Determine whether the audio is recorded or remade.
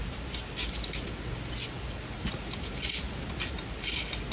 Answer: recorded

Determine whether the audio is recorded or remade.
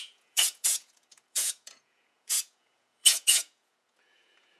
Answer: remade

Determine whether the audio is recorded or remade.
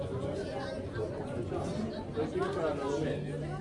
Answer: recorded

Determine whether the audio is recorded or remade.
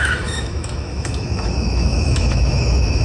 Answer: remade